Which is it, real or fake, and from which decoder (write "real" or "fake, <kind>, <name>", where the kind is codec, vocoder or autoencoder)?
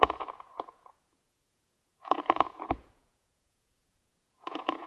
fake, vocoder, Vocos